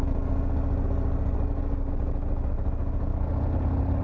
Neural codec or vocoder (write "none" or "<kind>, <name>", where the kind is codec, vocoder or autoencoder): none